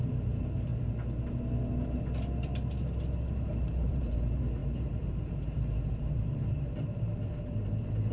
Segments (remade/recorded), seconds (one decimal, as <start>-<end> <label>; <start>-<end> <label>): 0.0-0.7 remade; 0.7-3.3 recorded; 3.3-8.1 remade